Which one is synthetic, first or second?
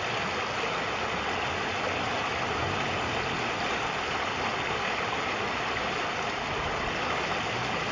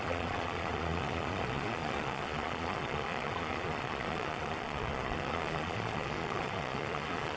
second